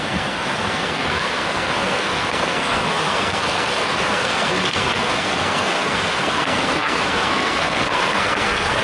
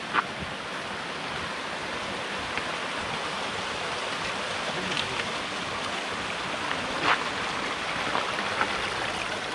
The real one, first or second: second